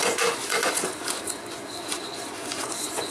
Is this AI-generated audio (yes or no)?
yes